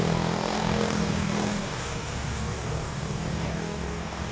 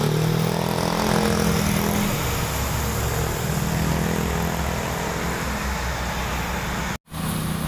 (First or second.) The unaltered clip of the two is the second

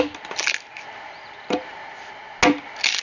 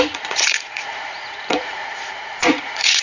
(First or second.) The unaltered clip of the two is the first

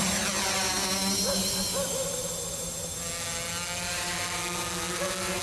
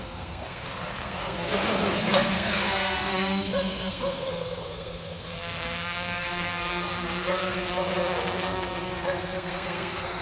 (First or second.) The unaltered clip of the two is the first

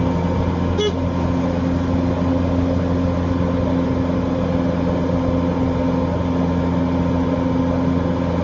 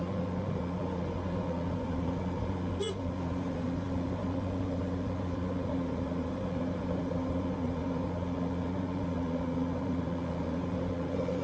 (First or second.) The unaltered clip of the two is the first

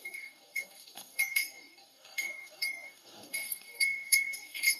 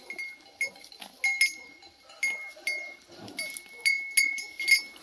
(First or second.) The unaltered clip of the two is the second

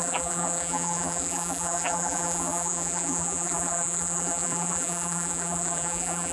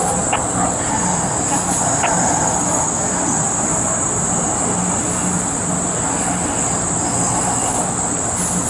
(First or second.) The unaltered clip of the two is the second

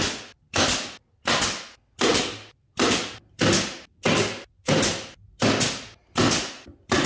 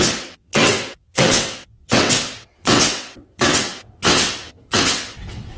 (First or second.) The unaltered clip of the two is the first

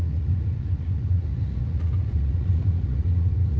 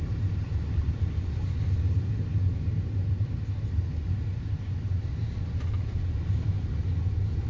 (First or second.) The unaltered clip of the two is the second